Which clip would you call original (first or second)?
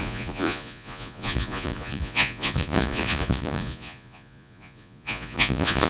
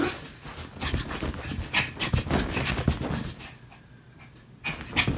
second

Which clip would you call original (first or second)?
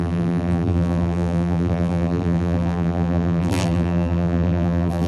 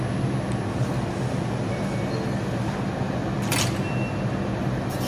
second